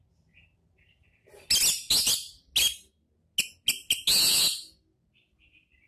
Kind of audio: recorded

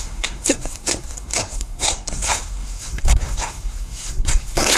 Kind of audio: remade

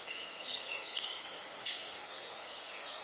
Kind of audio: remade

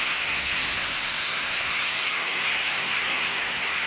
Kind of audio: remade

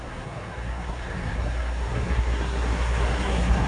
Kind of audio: remade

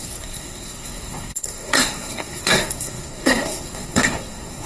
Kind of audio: remade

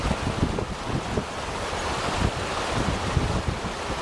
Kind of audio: recorded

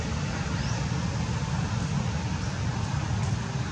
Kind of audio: recorded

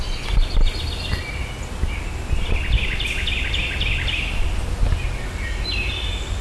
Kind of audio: recorded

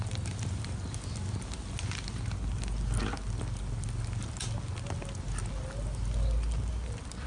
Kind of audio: recorded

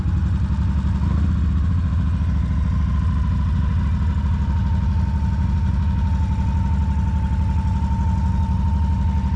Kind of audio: recorded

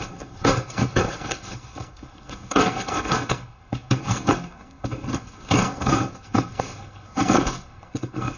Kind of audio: remade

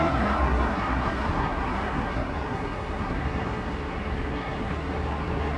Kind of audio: remade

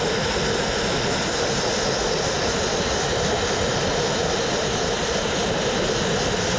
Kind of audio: recorded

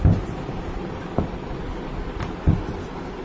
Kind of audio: recorded